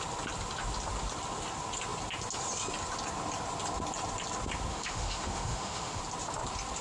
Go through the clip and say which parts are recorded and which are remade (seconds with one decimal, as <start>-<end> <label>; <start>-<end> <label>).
0.0-4.7 recorded; 4.7-6.0 remade; 6.0-6.8 recorded